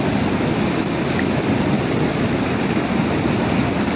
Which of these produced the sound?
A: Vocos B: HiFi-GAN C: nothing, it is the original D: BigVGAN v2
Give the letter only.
C